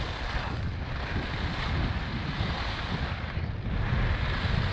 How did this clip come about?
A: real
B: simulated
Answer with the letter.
A